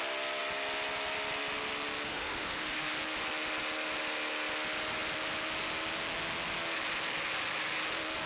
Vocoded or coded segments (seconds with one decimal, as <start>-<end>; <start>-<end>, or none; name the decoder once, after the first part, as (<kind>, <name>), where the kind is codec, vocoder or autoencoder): 2.1-2.9 (autoencoder, DAC-VAE)

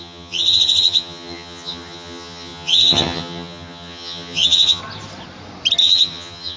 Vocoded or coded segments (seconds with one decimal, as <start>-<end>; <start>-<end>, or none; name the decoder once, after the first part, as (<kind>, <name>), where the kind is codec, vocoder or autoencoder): 0.0-4.8 (vocoder, HiFi-GAN); 5.8-6.6

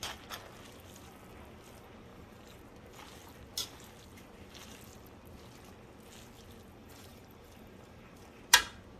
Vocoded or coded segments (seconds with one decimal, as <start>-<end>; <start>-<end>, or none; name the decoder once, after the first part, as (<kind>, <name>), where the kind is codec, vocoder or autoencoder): 2.1-2.6 (vocoder, BigVGAN v2); 6.8-8.4

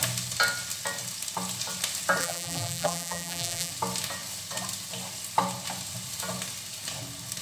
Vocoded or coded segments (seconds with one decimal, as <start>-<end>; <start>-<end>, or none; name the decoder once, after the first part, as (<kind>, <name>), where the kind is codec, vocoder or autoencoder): 2.2-3.7 (vocoder, BigVGAN v2)